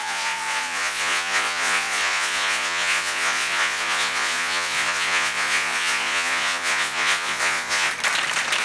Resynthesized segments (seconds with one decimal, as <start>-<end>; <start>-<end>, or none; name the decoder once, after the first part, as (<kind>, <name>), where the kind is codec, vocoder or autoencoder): 0.0-7.9 (vocoder, Vocos)